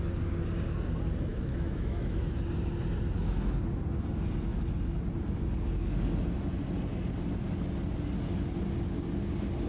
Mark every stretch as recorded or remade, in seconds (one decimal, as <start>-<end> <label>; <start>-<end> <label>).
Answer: 0.0-1.3 recorded; 1.3-2.3 remade; 2.3-9.7 recorded